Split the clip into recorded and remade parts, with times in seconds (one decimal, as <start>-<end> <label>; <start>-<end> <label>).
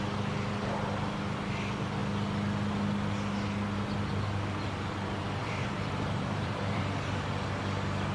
0.0-5.4 recorded; 5.4-6.8 remade; 6.8-8.1 recorded